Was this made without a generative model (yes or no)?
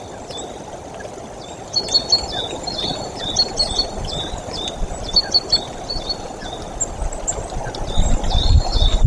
yes